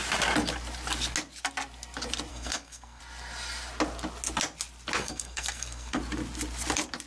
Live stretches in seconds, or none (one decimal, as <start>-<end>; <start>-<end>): 0.0-2.3; 3.0-5.0; 6.0-7.1